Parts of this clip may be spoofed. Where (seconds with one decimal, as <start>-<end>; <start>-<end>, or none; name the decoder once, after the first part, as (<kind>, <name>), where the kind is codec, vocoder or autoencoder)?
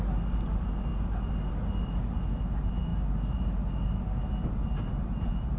none